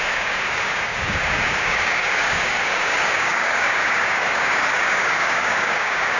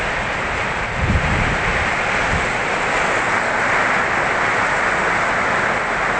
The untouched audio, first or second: second